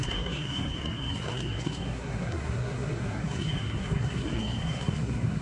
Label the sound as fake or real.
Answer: fake